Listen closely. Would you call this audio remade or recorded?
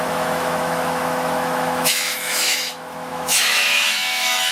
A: remade